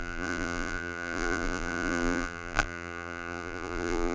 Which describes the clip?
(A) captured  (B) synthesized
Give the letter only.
B